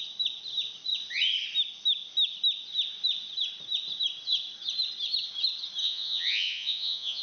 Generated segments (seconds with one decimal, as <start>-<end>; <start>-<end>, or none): 5.8-7.2